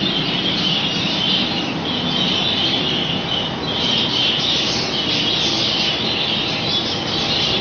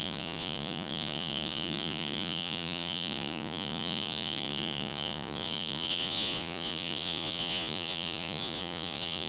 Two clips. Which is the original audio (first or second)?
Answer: first